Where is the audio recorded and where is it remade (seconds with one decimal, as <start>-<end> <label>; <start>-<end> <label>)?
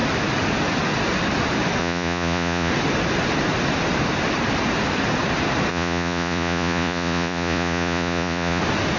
0.0-1.8 recorded; 1.8-2.7 remade; 2.7-5.7 recorded; 5.7-8.6 remade; 8.6-9.0 recorded